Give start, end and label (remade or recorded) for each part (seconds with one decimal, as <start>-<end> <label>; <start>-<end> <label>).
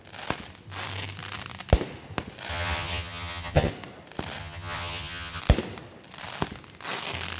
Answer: 0.0-2.5 recorded; 2.5-3.7 remade; 3.7-4.4 recorded; 4.4-5.4 remade; 5.4-7.4 recorded